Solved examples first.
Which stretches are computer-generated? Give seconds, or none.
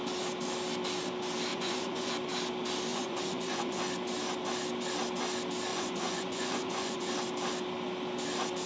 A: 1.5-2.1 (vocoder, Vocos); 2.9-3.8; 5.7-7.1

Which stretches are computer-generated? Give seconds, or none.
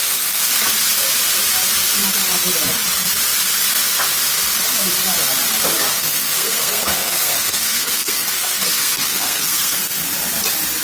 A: 0.0-0.5 (codec, SNAC); 5.9-10.0